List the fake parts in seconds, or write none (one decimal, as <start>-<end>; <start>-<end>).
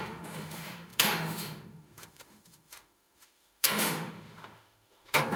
0.0-5.4